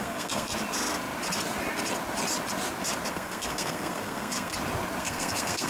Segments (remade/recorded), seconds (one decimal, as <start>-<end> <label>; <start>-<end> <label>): 0.0-0.5 remade; 0.5-3.1 recorded; 3.1-4.5 remade; 4.5-5.0 recorded; 5.0-5.7 remade